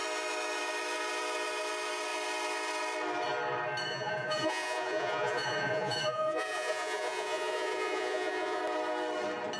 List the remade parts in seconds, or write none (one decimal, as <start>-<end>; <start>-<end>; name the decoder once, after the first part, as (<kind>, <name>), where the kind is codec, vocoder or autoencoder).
3.9-8.6 (vocoder, Vocos)